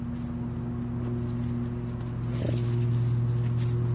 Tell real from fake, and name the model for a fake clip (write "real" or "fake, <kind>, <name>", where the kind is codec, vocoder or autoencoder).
real